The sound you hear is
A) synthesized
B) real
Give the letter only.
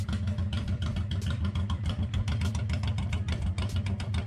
A